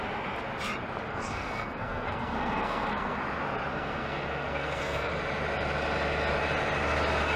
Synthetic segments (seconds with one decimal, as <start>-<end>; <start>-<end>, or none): 1.1-3.2; 3.7-5.1